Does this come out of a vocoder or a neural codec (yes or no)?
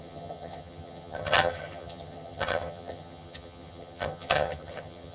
yes